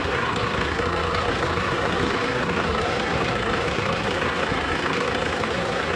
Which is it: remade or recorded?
remade